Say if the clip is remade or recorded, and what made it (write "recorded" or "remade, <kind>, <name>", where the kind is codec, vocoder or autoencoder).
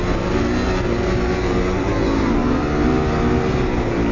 recorded